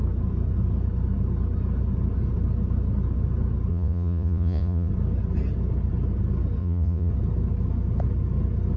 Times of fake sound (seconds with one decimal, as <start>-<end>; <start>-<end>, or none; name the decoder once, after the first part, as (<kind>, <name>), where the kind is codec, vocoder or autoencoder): 3.7-4.9 (vocoder, Vocos); 6.6-7.1

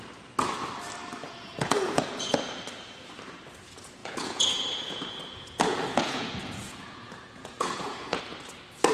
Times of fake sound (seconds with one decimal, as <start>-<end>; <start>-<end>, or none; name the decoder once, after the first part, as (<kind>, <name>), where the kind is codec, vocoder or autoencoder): 1.2-2.6 (vocoder, Vocos); 4.0-8.2

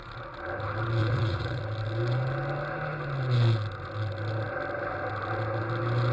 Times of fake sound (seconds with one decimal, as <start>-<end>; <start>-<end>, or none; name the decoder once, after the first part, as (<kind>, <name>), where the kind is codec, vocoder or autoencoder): 1.0-1.6 (vocoder, Vocos)

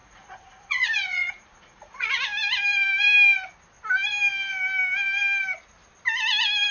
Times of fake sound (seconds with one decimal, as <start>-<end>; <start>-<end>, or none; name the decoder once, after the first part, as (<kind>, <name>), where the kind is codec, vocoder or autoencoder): 0.0-2.2 (vocoder, Vocos)

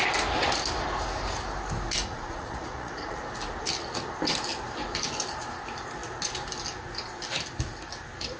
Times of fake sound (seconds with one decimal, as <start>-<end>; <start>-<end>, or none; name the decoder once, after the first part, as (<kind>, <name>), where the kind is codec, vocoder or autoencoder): 2.0-3.2 (vocoder, Vocos)

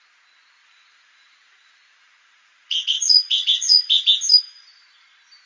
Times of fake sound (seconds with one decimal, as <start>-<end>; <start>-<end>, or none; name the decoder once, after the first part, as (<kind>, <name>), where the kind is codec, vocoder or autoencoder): 0.6-3.9 (vocoder, Vocos)

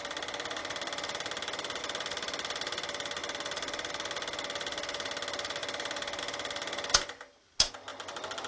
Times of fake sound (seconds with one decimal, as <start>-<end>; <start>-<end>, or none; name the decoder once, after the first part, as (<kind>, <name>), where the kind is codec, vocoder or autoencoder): none